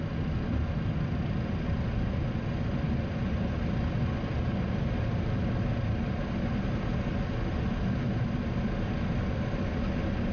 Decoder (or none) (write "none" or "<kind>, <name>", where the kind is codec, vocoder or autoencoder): none